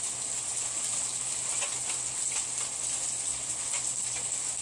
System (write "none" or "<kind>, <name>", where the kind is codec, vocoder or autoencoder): none